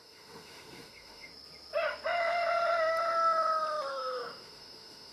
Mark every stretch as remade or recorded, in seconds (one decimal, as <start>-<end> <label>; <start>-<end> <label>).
0.0-1.3 remade; 1.3-3.9 recorded; 3.9-5.1 remade